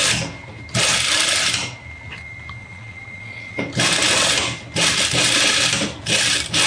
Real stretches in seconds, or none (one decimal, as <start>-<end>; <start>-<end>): 0.0-2.6; 3.6-6.7